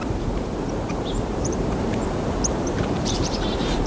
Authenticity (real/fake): fake